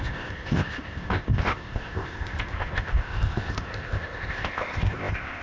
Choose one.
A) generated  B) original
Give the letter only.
A